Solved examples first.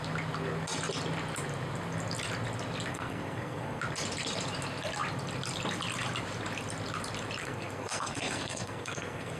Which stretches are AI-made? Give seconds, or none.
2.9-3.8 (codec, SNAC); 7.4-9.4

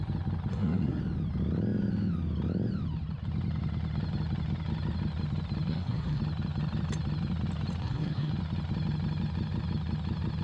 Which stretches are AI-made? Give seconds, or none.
0.5-1.0 (codec, SNAC); 5.7-6.2; 7.8-8.3

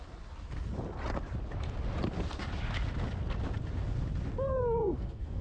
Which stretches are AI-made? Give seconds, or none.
4.8-5.4 (codec, SNAC)

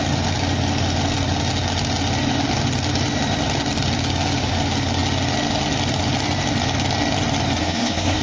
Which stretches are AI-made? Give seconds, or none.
7.6-8.2 (codec, SNAC)